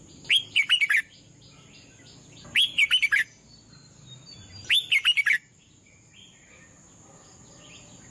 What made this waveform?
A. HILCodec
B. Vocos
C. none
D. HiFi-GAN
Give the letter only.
C